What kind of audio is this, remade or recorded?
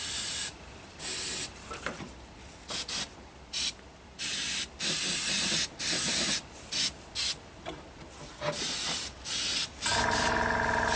recorded